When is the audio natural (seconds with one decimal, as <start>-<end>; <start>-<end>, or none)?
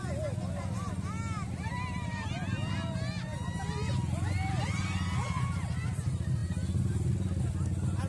0.0-8.1